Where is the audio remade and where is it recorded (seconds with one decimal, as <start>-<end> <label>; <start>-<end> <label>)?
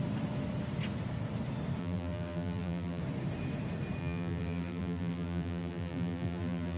0.0-1.8 recorded; 1.8-3.0 remade; 3.0-4.0 recorded; 4.0-6.8 remade